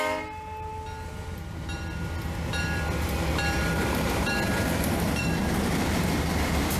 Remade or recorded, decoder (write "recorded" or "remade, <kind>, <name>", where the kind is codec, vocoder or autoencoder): recorded